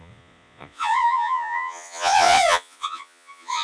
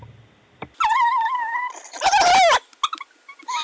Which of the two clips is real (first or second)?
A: second